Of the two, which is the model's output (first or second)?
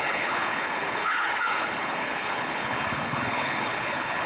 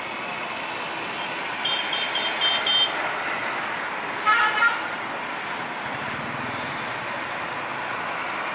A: first